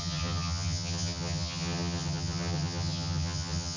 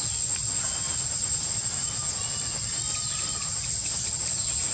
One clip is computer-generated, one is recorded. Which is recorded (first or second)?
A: second